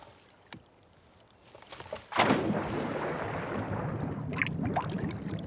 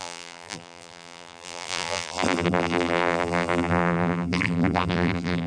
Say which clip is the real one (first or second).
first